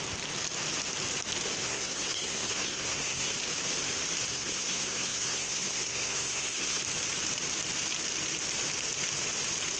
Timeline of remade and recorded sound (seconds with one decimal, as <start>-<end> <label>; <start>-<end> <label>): 0.0-1.6 recorded; 1.6-3.3 remade; 3.3-4.3 recorded; 4.3-6.8 remade; 6.8-9.8 recorded